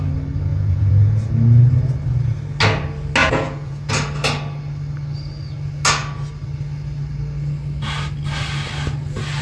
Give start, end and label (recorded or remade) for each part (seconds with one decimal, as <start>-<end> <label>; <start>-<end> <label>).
0.0-0.5 recorded; 0.5-1.3 remade; 1.3-3.2 recorded; 3.2-3.9 remade; 3.9-9.4 recorded